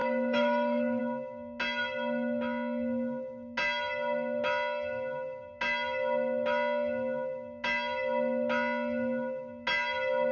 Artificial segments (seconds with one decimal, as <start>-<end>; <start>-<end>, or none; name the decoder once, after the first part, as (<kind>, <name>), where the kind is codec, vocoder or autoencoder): 0.0-1.0 (codec, DAC)